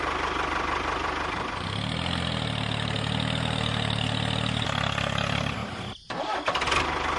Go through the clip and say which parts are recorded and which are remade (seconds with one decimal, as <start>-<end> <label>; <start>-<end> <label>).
0.0-7.2 recorded